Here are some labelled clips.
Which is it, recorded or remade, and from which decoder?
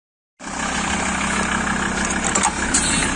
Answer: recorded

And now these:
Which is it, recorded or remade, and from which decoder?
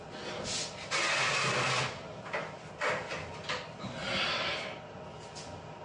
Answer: recorded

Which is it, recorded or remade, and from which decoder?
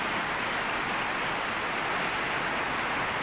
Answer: recorded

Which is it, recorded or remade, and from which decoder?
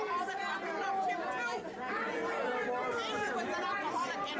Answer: recorded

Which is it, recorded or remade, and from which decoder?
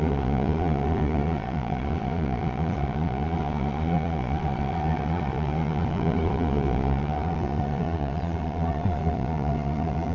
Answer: remade, vocoder, Vocos